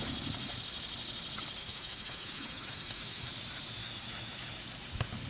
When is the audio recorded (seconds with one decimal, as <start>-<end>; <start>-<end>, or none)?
0.0-1.6; 3.3-3.8; 4.6-5.3